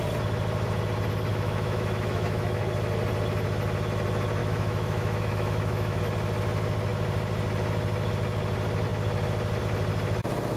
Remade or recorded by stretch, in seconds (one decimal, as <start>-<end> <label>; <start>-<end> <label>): 0.0-1.3 recorded; 1.3-2.6 remade; 2.6-4.4 recorded; 4.4-6.0 remade; 6.0-10.6 recorded